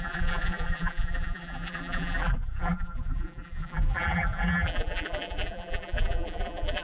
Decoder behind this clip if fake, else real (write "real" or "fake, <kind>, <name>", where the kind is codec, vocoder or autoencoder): fake, vocoder, BigVGAN v2